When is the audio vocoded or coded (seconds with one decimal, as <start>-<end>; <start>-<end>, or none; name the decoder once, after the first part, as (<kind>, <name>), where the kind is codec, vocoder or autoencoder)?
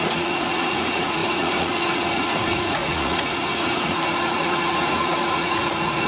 0.0-6.1 (vocoder, Vocos)